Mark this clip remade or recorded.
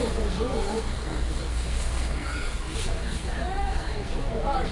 remade